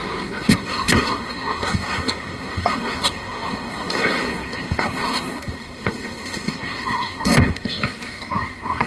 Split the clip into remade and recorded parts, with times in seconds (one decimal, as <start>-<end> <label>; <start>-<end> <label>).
0.0-8.9 remade